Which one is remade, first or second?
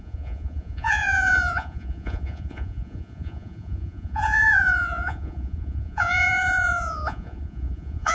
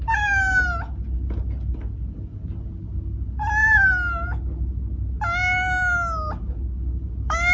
first